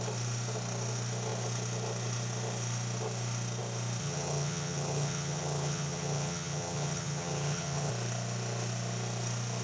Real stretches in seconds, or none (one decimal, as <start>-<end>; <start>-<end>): 0.0-4.0; 7.9-9.6